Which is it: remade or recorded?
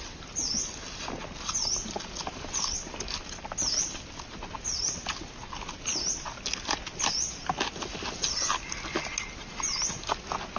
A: recorded